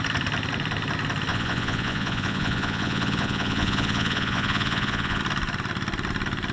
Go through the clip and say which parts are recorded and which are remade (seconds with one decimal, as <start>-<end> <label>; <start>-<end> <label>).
0.0-1.3 recorded; 1.3-5.2 remade; 5.2-6.5 recorded